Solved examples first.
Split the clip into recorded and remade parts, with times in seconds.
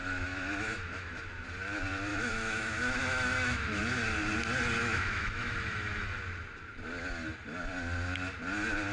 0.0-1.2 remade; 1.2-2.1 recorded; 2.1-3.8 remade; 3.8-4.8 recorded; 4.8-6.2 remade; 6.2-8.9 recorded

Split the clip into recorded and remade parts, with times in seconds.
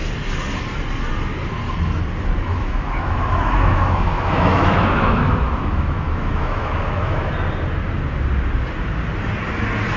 0.0-2.5 recorded; 2.5-7.3 remade; 7.3-10.0 recorded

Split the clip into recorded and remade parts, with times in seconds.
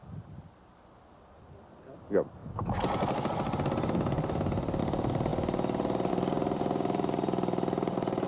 0.0-8.3 recorded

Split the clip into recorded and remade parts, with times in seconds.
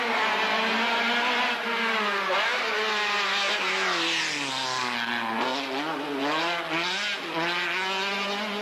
0.0-8.6 recorded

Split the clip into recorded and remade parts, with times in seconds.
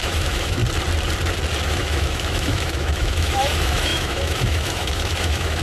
0.0-0.6 remade; 0.6-1.7 recorded; 1.7-5.6 remade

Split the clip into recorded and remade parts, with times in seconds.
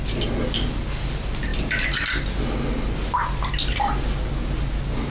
0.0-5.1 recorded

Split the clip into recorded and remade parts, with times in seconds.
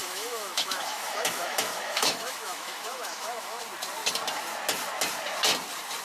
0.0-3.6 remade; 3.6-6.0 recorded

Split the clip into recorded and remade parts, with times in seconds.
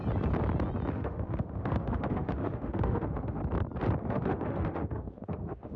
0.0-0.9 recorded; 0.9-3.4 remade; 3.4-4.0 recorded; 4.0-5.8 remade